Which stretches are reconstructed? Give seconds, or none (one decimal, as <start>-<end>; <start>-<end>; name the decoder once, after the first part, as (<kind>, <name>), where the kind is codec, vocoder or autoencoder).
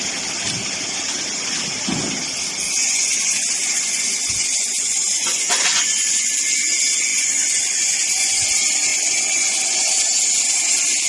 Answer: 2.8-6.3 (vocoder, Vocos); 7.1-8.4; 8.9-9.9